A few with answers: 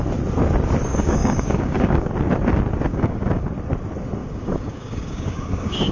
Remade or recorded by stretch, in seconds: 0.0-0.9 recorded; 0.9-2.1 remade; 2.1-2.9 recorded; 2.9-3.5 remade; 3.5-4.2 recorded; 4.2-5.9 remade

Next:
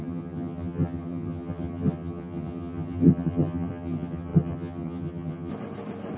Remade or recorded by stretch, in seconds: 0.0-5.5 remade; 5.5-6.2 recorded

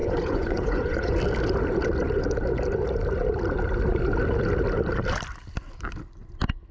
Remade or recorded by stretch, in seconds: 0.0-1.2 remade; 1.2-6.7 recorded

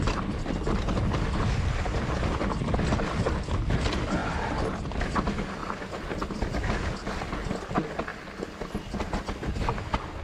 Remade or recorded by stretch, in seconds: 0.0-4.2 recorded; 4.2-5.0 remade; 5.0-10.2 recorded